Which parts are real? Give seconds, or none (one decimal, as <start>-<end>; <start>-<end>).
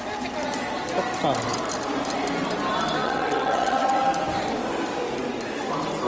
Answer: 0.0-3.0; 4.0-6.1